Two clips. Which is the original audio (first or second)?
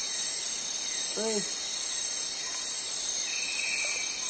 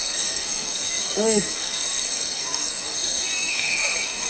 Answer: first